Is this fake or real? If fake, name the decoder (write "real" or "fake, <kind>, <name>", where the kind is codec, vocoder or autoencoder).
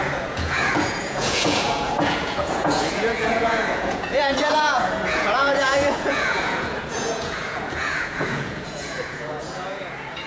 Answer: fake, vocoder, Vocos